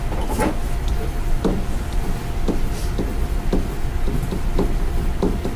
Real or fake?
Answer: real